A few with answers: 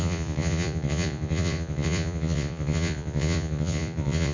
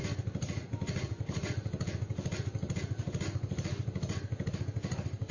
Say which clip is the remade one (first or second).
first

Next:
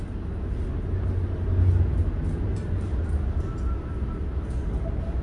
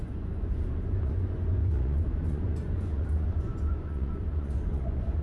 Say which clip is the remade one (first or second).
second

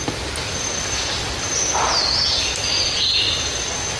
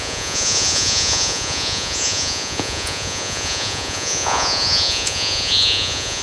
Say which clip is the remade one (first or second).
second